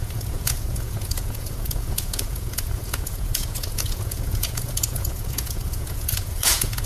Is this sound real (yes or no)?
no